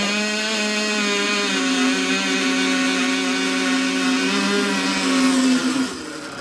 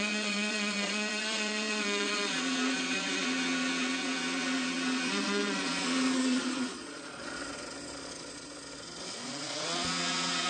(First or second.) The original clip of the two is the first